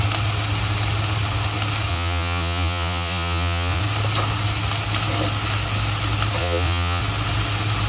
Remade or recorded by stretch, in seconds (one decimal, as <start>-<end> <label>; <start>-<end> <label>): 0.0-1.9 recorded; 1.9-3.8 remade; 3.8-6.4 recorded; 6.4-7.0 remade; 7.0-7.9 recorded